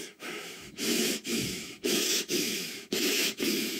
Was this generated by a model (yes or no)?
yes